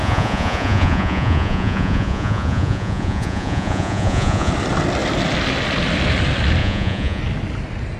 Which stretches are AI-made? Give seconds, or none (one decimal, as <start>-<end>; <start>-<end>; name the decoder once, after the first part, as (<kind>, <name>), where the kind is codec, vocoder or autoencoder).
0.0-4.5 (vocoder, Vocos); 6.6-7.2